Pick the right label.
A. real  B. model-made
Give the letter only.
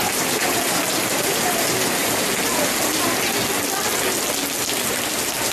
A